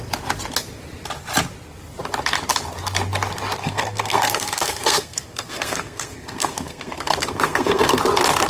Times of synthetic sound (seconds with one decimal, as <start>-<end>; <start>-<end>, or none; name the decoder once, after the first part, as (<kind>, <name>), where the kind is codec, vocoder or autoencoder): 3.6-8.0 (codec, SNAC)